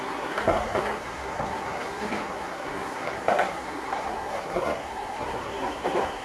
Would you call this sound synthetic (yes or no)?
yes